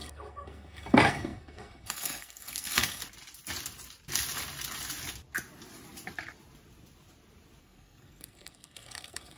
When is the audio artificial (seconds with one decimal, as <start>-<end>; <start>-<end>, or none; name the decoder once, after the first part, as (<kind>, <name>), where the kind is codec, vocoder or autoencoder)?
0.0-3.0 (codec, SNAC); 7.6-9.4